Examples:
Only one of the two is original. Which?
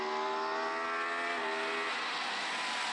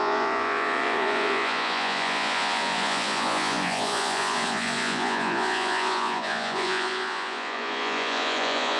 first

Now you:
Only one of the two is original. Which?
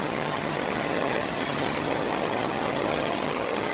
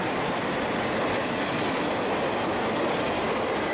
second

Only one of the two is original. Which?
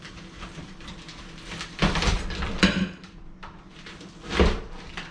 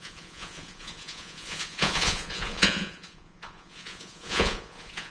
first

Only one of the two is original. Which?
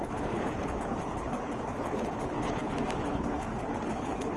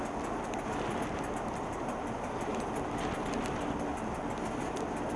second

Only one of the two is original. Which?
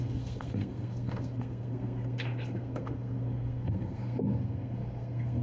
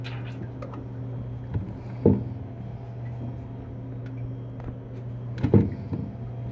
second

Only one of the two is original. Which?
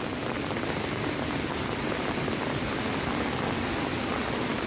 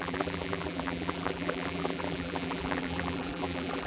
first